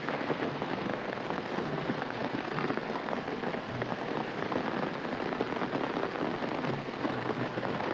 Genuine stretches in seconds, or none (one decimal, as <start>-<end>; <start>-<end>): 4.6-6.7